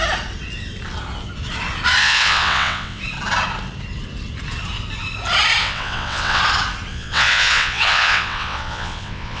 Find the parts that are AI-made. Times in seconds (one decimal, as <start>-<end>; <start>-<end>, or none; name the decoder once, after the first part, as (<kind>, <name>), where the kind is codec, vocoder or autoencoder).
2.0-3.0 (vocoder, WaveNeXt); 5.6-6.4; 6.9-9.4